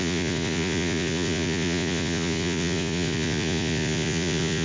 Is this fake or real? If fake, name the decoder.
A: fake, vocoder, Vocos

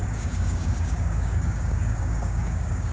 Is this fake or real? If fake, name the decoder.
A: fake, codec, DAC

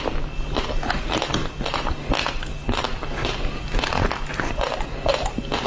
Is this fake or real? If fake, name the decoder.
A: real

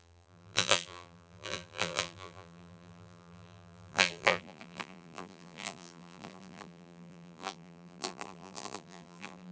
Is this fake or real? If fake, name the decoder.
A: fake, vocoder, BigVGAN v2